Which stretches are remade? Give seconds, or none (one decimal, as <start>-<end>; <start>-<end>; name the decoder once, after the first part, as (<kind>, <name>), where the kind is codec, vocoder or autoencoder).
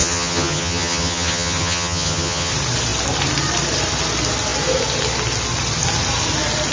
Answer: 0.0-2.5 (vocoder, HiFi-GAN)